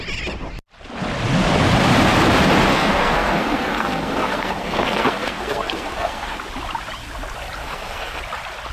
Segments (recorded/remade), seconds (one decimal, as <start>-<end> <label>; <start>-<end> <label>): 0.0-2.7 recorded; 2.7-6.4 remade; 6.4-7.6 recorded; 7.6-8.2 remade; 8.2-8.7 recorded